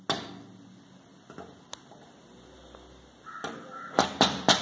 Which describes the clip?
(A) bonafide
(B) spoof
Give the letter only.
A